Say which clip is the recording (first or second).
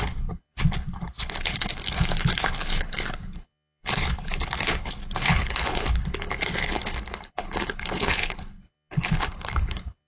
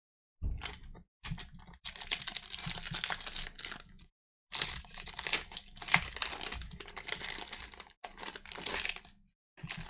second